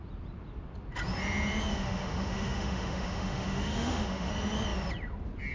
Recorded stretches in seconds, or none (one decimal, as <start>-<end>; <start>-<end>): 0.0-1.7; 4.3-5.5